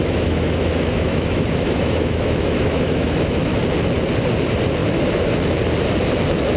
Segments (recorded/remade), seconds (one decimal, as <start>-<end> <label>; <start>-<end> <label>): 0.0-3.6 remade; 3.6-6.6 recorded